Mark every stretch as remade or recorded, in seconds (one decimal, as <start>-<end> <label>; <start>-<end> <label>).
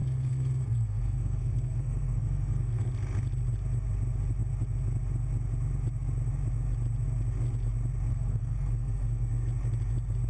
0.0-2.9 remade; 2.9-8.1 recorded; 8.1-9.3 remade; 9.3-10.3 recorded